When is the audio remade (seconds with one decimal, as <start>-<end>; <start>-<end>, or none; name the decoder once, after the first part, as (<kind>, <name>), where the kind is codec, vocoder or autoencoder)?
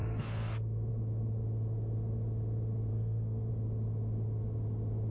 0.0-0.9 (codec, SNAC); 2.9-3.5